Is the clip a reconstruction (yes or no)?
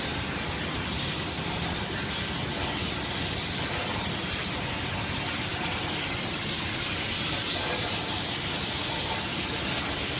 no